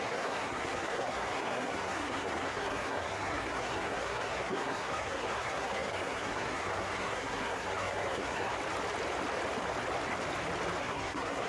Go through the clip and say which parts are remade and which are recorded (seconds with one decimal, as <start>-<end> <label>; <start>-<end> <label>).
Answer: 0.0-8.5 remade; 8.5-10.8 recorded; 10.8-11.5 remade